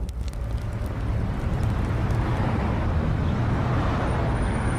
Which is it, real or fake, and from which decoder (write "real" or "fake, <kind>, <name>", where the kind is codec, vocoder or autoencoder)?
real